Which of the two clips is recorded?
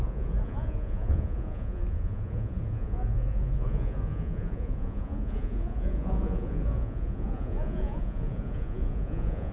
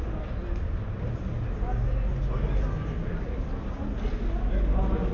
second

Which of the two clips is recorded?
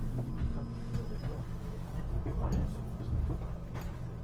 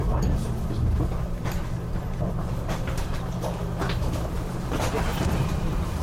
first